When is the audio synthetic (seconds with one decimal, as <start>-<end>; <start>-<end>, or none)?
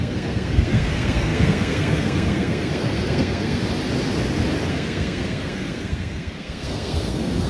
0.0-3.6; 4.7-7.5